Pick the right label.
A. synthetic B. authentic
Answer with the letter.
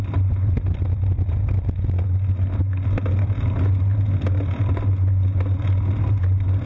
B